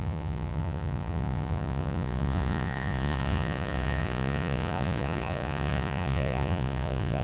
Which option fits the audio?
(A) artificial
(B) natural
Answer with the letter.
A